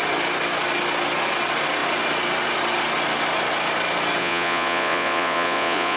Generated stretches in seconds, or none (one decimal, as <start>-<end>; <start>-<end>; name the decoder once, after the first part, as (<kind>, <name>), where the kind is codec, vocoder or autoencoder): 4.2-6.0 (vocoder, Vocos)

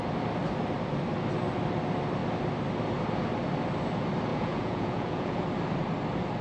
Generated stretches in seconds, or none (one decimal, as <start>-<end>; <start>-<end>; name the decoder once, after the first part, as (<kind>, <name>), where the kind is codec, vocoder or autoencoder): 4.3-5.4 (vocoder, Vocos)